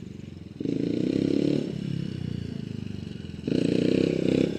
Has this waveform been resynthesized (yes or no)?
no